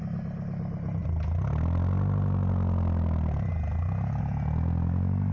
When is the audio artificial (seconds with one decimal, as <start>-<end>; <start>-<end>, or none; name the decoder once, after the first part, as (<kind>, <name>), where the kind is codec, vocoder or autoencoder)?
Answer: none